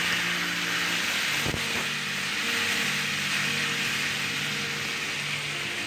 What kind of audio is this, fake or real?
real